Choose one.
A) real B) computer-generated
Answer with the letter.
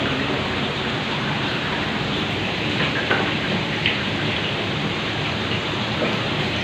B